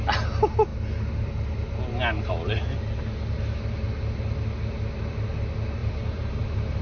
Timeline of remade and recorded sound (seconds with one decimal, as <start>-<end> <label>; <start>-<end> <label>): 0.0-5.8 recorded; 5.8-6.8 remade